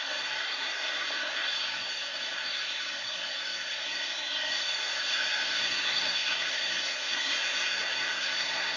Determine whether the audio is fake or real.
fake